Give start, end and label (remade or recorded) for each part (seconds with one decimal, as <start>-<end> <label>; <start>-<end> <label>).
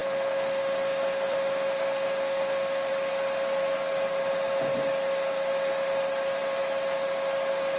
0.0-2.9 remade; 2.9-7.8 recorded